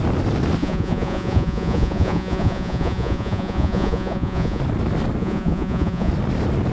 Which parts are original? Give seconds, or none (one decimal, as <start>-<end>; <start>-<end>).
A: 0.0-0.6; 4.6-5.2; 6.1-6.7